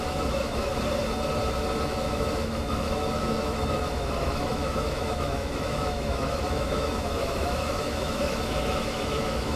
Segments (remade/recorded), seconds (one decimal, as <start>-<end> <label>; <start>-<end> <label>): 0.0-0.7 remade; 0.7-1.9 recorded; 1.9-9.6 remade